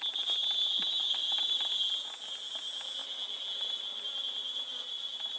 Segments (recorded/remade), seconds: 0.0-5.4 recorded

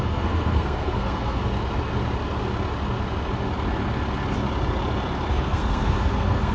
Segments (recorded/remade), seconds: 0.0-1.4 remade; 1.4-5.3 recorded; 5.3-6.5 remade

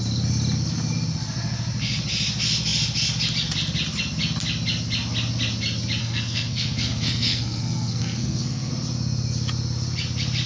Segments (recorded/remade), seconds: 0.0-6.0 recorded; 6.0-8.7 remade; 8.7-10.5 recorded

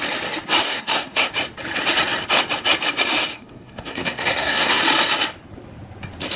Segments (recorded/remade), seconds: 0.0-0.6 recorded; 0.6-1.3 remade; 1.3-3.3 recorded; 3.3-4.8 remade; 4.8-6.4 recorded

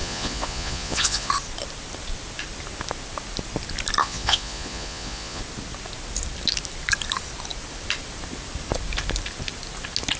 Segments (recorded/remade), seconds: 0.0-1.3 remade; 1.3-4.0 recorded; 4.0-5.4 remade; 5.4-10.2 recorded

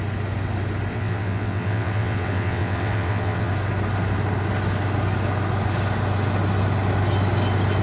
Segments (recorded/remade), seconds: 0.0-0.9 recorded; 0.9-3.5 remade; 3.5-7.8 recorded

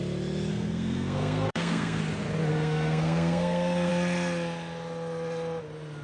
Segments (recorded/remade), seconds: 0.0-0.5 recorded; 0.5-2.0 remade; 2.0-2.5 recorded; 2.5-3.9 remade; 3.9-6.0 recorded

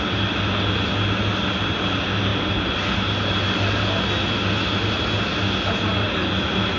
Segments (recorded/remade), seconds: 0.0-6.8 recorded